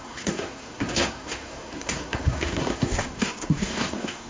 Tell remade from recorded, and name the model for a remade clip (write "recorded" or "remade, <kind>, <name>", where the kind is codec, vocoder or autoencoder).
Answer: remade, codec, SNAC